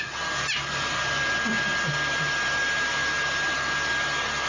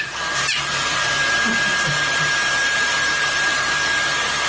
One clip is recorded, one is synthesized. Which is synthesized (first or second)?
second